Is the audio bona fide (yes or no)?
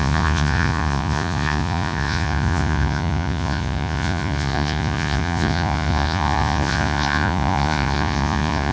no